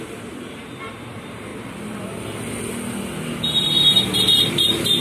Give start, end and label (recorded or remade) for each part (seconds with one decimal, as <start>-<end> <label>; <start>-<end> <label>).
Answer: 0.0-1.5 remade; 1.5-4.5 recorded; 4.5-5.0 remade